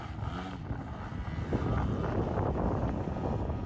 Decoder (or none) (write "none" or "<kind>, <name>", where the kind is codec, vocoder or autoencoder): none